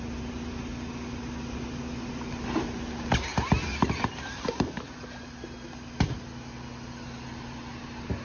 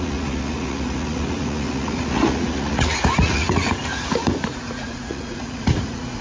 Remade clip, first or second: second